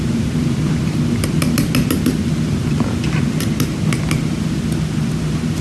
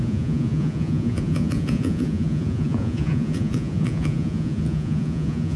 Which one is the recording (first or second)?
first